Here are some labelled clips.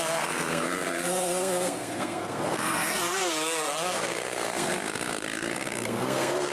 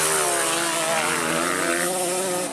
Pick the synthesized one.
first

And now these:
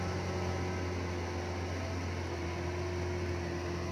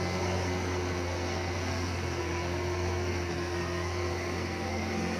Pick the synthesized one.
second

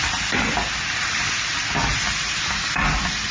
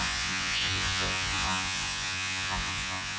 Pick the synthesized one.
second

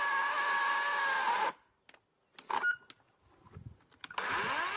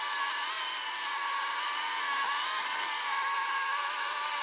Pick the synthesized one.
second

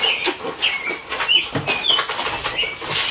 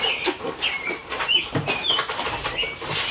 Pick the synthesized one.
second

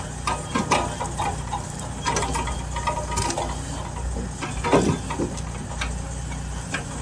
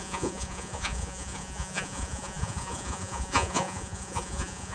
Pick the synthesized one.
second